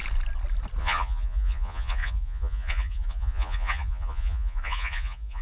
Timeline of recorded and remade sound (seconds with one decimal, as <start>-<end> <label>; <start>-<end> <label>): 0.0-0.8 recorded; 0.8-5.4 remade